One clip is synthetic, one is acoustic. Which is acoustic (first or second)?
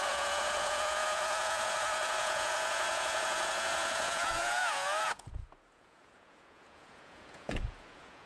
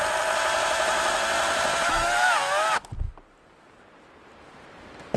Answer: second